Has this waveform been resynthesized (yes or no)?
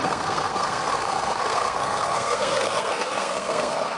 yes